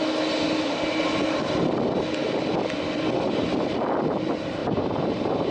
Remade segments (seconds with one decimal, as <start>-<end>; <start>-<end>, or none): 4.6-5.5